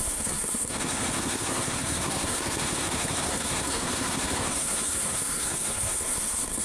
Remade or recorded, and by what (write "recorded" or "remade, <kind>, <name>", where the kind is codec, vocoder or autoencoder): remade, codec, SNAC